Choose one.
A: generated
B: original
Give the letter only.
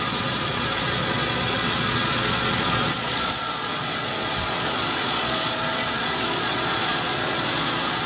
A